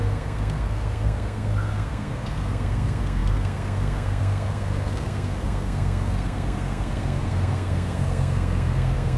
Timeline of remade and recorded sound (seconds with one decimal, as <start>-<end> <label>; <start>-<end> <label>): 0.0-9.2 remade